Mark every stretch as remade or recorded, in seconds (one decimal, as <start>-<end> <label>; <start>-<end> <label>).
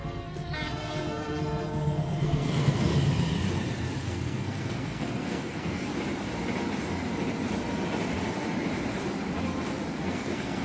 0.0-2.9 remade; 2.9-4.0 recorded; 4.0-5.9 remade; 5.9-10.0 recorded; 10.0-10.6 remade